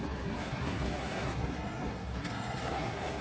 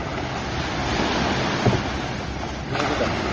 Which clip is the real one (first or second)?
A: second